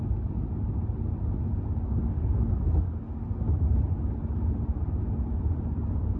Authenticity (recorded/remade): recorded